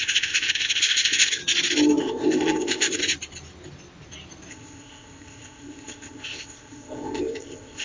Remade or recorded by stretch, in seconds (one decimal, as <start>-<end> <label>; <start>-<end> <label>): 0.0-1.4 remade; 1.4-2.0 recorded; 2.0-3.0 remade; 3.0-4.5 recorded; 4.5-7.8 remade